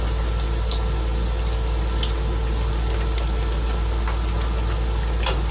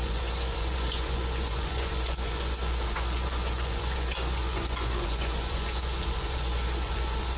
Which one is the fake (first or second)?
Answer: second